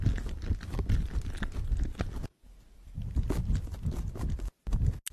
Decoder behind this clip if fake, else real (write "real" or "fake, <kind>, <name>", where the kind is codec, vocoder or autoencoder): real